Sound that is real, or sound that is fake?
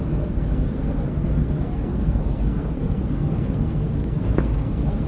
fake